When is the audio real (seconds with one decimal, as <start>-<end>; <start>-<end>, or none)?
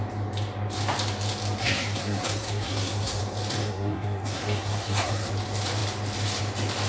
0.0-1.6; 3.2-3.6; 5.3-6.9